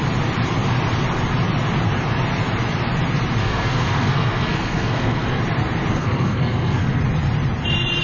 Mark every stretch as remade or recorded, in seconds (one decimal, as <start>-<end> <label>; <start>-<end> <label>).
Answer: 0.0-3.4 recorded; 3.4-5.4 remade; 5.4-5.9 recorded; 5.9-7.0 remade; 7.0-8.0 recorded